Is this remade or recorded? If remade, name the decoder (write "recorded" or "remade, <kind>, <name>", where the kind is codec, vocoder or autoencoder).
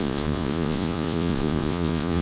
remade, vocoder, Vocos